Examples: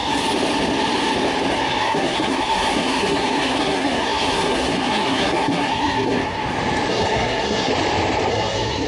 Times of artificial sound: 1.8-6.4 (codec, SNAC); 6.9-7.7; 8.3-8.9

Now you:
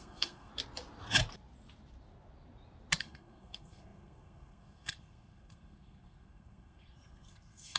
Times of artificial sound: 0.0-0.5 (codec, SNAC); 3.0-7.8